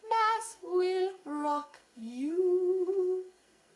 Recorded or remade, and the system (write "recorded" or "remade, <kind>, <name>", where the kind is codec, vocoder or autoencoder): remade, codec, SNAC